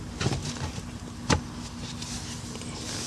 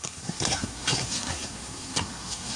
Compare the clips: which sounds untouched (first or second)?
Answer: first